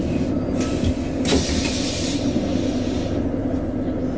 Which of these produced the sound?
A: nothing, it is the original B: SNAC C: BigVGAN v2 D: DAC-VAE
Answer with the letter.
A